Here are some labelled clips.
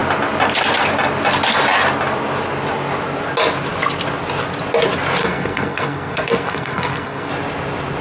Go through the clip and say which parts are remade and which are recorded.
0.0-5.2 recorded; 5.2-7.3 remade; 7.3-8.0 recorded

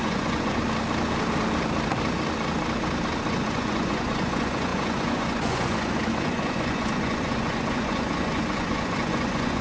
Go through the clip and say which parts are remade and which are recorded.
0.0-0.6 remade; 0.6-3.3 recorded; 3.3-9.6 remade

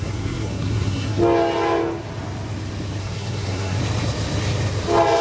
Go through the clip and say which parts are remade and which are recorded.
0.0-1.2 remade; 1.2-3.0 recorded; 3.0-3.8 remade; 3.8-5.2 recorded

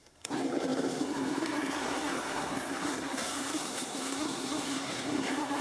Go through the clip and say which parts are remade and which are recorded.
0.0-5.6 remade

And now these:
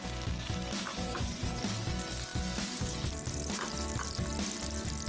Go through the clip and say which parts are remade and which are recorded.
0.0-0.9 recorded; 0.9-1.6 remade; 1.6-5.1 recorded

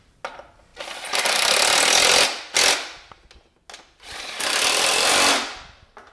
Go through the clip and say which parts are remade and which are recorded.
0.0-6.1 recorded